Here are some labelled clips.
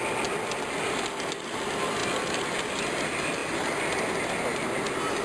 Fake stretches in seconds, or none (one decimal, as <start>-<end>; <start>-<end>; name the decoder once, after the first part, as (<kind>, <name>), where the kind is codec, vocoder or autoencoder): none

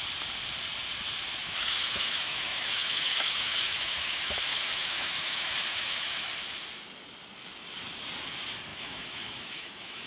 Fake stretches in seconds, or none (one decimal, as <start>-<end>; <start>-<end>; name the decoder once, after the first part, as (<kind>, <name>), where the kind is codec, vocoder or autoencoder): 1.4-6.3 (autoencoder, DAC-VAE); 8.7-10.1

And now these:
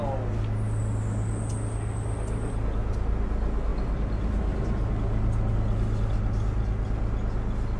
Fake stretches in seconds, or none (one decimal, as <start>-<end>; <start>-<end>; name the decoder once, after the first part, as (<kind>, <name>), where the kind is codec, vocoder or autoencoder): none

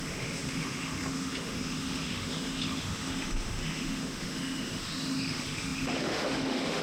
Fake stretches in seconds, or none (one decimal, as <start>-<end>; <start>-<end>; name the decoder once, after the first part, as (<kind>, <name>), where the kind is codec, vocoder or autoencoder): 0.0-6.8 (autoencoder, DAC-VAE)